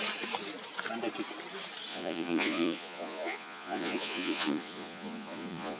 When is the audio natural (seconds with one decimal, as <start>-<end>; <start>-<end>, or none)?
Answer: 0.0-1.9